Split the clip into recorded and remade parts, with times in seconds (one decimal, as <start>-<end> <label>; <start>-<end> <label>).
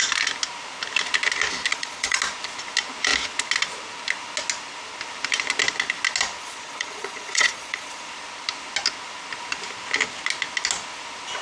0.0-1.7 recorded; 1.7-2.2 remade; 2.2-6.4 recorded; 6.4-8.1 remade; 8.1-11.4 recorded